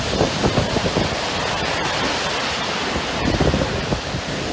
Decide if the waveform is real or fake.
real